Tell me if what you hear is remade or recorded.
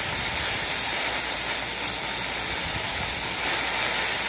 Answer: recorded